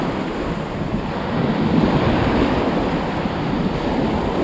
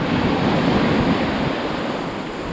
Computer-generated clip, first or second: second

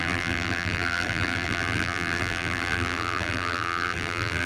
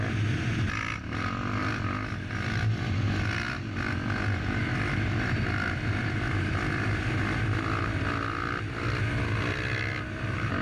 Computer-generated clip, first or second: first